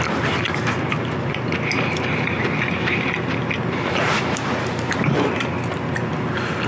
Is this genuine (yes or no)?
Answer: yes